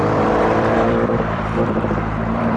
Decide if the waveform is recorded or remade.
remade